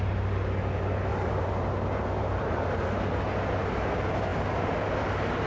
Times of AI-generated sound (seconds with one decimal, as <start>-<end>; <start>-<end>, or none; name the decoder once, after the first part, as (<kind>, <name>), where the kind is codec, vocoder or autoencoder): 1.1-2.9 (vocoder, BigVGAN v2)